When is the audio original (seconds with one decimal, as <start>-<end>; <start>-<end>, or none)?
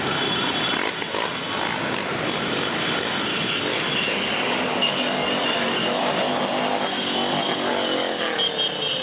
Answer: 0.0-3.7; 6.4-7.7; 8.5-9.0